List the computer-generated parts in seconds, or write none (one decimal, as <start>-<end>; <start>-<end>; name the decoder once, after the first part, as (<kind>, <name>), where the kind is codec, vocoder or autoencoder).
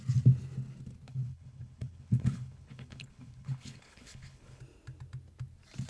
1.1-4.6 (codec, HILCodec)